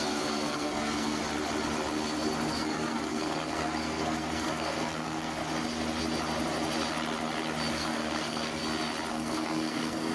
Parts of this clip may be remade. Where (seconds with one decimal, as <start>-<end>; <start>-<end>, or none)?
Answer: 0.0-1.2; 2.5-5.4; 7.7-8.6; 9.1-10.1